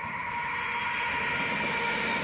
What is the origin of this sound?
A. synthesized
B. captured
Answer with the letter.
B